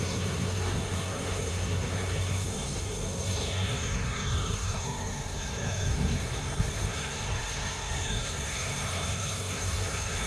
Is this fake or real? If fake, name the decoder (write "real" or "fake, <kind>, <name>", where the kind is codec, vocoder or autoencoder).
fake, codec, SNAC